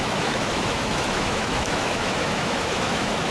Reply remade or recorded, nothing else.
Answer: remade